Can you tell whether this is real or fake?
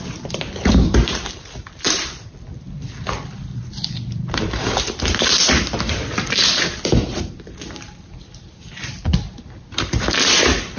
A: fake